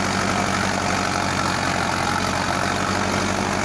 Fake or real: real